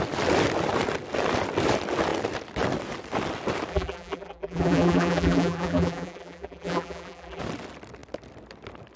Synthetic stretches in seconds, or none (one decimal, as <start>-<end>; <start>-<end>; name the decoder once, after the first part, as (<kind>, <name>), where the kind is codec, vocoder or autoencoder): 3.7-7.4 (vocoder, BigVGAN v2)